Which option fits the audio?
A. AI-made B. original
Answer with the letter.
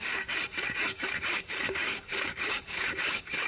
A